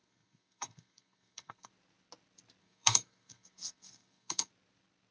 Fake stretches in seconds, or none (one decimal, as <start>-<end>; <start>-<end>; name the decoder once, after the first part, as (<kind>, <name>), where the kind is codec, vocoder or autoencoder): 0.0-1.7 (codec, SNAC); 2.6-4.5